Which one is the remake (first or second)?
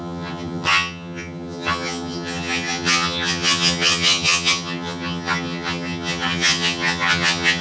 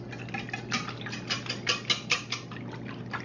first